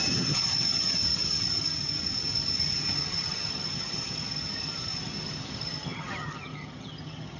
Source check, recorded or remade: remade